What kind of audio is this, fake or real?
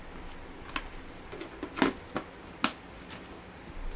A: real